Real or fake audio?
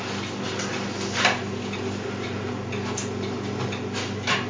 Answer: real